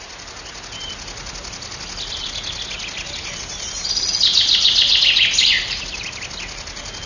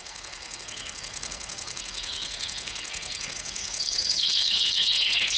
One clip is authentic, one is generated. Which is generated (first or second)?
second